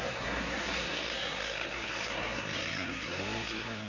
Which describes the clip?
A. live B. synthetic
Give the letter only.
B